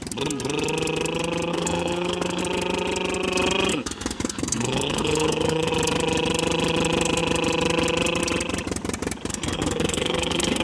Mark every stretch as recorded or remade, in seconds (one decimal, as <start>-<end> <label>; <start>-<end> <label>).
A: 0.0-1.5 recorded; 1.5-2.4 remade; 2.4-3.7 recorded; 3.7-5.7 remade; 5.7-9.3 recorded; 9.3-10.6 remade